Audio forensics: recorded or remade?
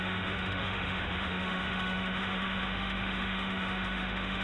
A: remade